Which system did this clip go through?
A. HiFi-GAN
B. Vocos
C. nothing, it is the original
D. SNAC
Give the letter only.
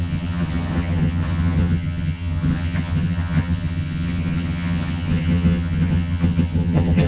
A